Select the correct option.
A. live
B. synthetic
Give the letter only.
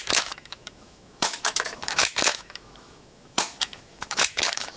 B